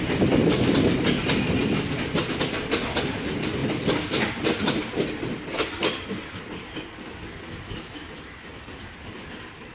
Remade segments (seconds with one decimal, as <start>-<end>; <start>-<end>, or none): none